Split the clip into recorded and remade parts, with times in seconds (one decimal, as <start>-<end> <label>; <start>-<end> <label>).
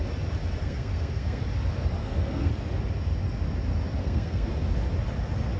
0.0-0.6 recorded; 0.6-1.4 remade; 1.4-2.0 recorded; 2.0-2.5 remade; 2.5-4.0 recorded; 4.0-4.5 remade; 4.5-5.6 recorded